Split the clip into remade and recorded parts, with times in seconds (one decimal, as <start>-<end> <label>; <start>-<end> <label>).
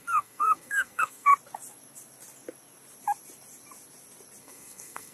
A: 0.0-1.3 remade; 1.3-4.4 recorded; 4.4-5.1 remade